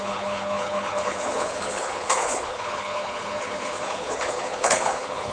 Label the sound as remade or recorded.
remade